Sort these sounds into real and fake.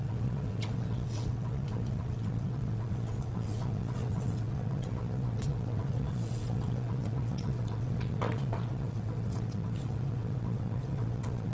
fake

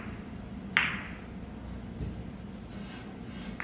real